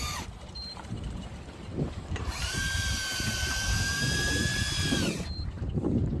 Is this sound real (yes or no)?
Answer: no